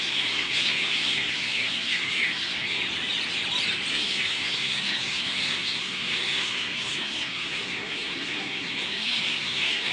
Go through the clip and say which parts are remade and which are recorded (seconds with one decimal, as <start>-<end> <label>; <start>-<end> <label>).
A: 0.0-2.8 remade; 2.8-3.9 recorded; 3.9-9.9 remade